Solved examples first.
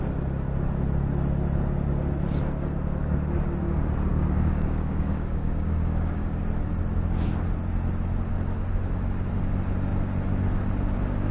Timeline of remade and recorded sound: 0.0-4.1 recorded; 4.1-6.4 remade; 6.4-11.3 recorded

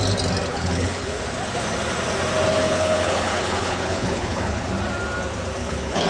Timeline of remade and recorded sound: 0.0-0.5 recorded; 0.5-1.2 remade; 1.2-2.6 recorded; 2.6-4.7 remade; 4.7-5.6 recorded; 5.6-6.1 remade

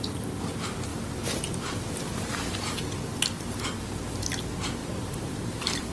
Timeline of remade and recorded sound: 0.0-4.8 recorded; 4.8-5.9 remade

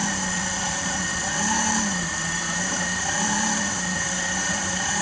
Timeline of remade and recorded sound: 0.0-5.0 remade

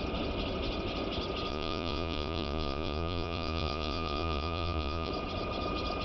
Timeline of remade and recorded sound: 0.0-1.5 recorded; 1.5-5.1 remade; 5.1-6.0 recorded

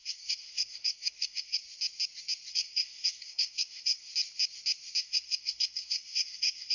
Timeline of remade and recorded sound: 0.0-1.6 remade; 1.6-2.5 recorded; 2.5-4.1 remade; 4.1-5.0 recorded; 5.0-6.7 remade